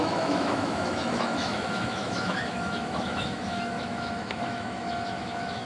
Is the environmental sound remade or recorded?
remade